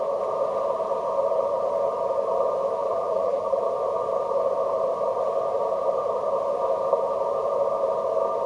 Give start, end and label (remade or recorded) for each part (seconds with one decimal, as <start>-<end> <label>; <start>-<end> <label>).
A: 0.0-2.8 recorded; 2.8-3.6 remade; 3.6-8.5 recorded